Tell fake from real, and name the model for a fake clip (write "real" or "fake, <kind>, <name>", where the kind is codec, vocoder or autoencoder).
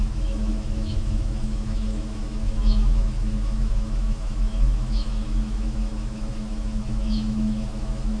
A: fake, autoencoder, DAC-VAE